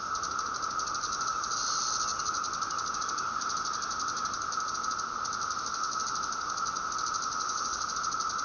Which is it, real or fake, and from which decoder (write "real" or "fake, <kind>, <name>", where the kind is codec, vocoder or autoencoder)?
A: real